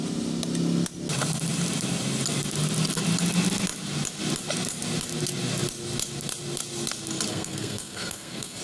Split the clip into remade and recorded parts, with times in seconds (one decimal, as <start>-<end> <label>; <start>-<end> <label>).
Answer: 0.0-7.3 recorded; 7.3-8.6 remade

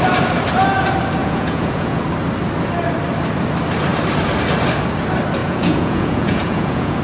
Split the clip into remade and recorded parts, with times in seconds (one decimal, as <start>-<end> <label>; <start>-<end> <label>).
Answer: 0.0-1.2 recorded; 1.2-2.0 remade; 2.0-5.4 recorded; 5.4-7.0 remade

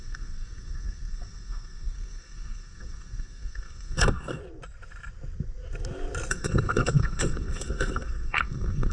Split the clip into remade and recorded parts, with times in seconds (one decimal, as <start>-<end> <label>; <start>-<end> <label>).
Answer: 0.0-4.4 remade; 4.4-6.3 recorded; 6.3-8.9 remade